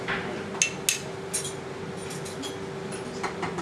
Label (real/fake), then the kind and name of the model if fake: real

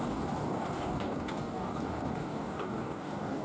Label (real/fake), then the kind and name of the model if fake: fake, codec, DAC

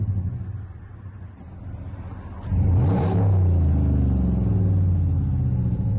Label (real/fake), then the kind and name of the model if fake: real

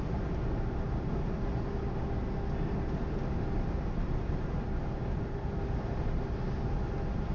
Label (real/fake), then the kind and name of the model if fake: real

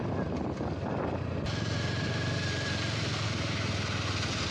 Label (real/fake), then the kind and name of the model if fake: real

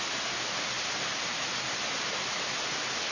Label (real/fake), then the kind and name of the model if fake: real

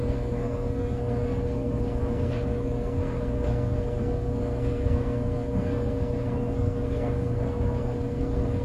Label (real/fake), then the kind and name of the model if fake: fake, codec, SNAC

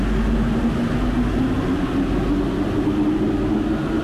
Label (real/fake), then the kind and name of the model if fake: real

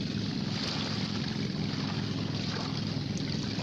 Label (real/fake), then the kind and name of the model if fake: real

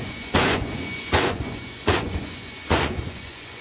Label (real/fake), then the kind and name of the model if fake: fake, vocoder, Vocos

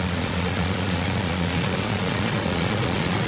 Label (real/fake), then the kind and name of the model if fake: fake, vocoder, Vocos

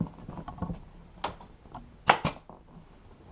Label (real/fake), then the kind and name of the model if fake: real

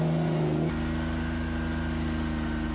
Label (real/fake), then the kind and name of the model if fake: real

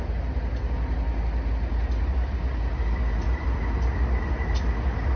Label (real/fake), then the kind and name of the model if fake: real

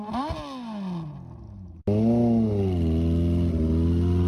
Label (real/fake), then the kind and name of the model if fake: real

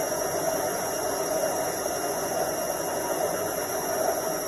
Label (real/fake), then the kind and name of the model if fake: fake, vocoder, Vocos